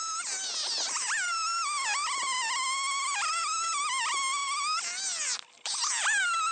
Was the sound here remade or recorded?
recorded